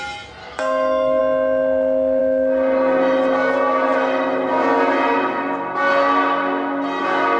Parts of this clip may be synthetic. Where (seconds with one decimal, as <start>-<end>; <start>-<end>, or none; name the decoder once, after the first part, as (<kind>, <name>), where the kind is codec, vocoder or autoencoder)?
0.4-1.2 (codec, DAC)